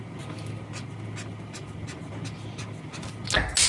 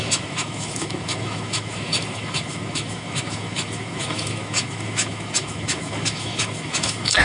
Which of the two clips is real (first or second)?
first